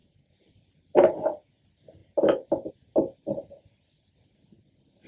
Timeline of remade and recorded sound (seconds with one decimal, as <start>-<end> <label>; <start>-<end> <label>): 0.0-1.1 remade; 1.1-2.0 recorded; 2.0-2.7 remade; 2.7-5.1 recorded